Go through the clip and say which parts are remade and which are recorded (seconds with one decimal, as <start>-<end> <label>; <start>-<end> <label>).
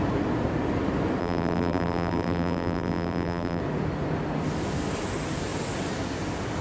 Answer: 0.0-1.2 recorded; 1.2-3.6 remade; 3.6-6.6 recorded